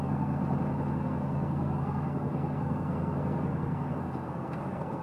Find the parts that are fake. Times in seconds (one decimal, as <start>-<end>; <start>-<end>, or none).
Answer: 0.0-0.4; 0.9-5.0